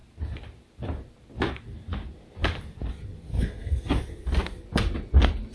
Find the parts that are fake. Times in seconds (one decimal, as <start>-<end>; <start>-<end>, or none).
3.3-3.9